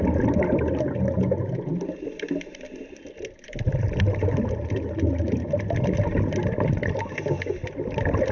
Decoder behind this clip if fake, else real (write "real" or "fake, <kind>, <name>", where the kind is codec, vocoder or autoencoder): real